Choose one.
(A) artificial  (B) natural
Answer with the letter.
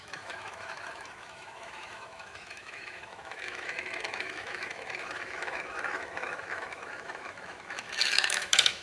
A